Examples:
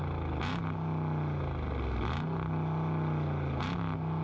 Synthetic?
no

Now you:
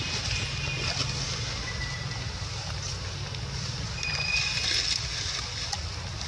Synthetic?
no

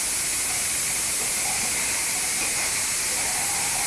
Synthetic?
no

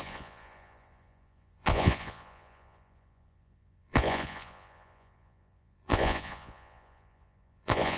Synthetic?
yes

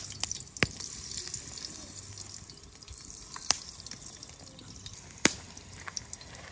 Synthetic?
no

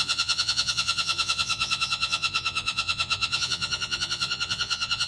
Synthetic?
yes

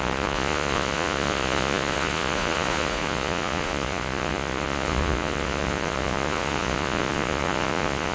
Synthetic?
yes